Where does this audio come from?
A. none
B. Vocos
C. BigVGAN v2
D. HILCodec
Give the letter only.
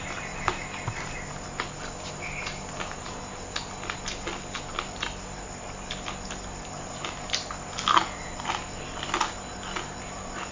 A